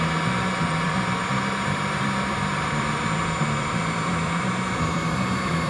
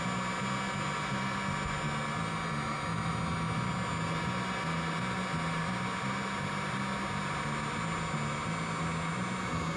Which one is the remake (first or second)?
first